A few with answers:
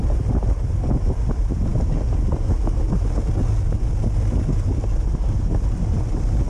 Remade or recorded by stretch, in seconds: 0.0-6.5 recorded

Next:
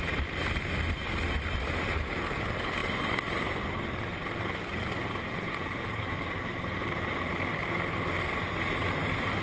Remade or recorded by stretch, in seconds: 0.0-9.4 recorded

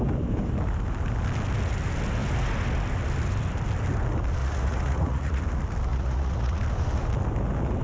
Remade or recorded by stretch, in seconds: 0.0-4.4 recorded; 4.4-5.4 remade; 5.4-5.9 recorded; 5.9-6.6 remade; 6.6-7.8 recorded

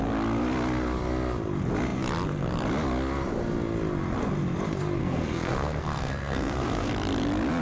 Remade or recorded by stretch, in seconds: 0.0-5.0 recorded; 5.0-6.9 remade; 6.9-7.6 recorded

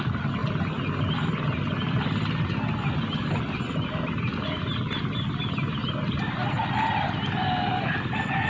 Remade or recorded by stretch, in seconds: 0.0-8.5 recorded

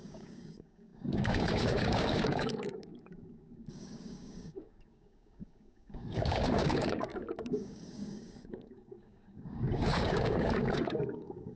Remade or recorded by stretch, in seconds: 0.0-11.6 remade